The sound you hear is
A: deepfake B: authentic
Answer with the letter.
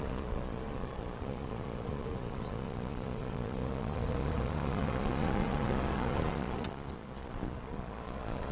A